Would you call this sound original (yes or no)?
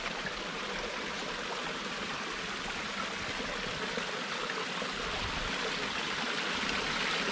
yes